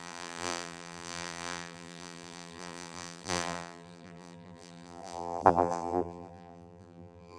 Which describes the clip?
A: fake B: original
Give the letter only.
A